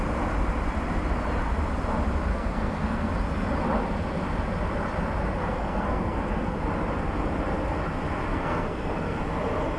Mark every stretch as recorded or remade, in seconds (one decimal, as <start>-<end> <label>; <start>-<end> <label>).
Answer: 0.0-2.3 recorded; 2.3-3.1 remade; 3.1-5.4 recorded; 5.4-6.6 remade; 6.6-8.3 recorded; 8.3-9.2 remade; 9.2-9.8 recorded